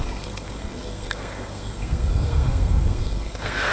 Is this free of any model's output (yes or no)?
no